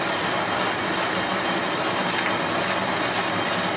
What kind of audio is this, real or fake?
real